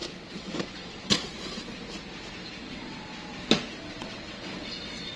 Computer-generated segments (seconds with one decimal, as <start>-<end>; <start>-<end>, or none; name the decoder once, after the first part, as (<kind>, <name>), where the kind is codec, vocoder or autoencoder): 0.0-1.3 (vocoder, WaveNeXt); 2.6-3.1; 3.7-5.2